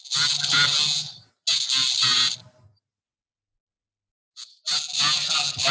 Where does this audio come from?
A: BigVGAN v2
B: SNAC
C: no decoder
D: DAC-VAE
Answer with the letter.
C